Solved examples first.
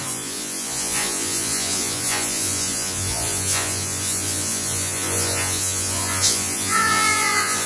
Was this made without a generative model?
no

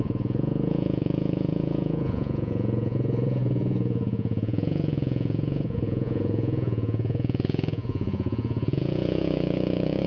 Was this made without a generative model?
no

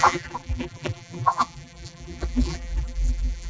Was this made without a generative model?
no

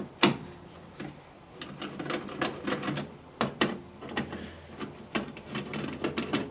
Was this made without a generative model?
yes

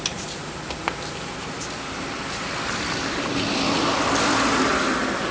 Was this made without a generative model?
yes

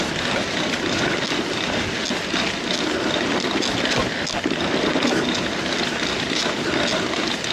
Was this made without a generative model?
yes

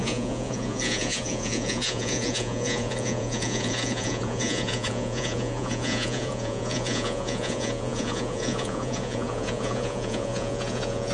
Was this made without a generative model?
no